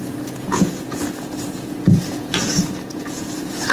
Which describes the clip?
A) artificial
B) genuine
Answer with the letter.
A